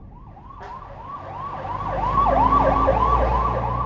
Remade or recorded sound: recorded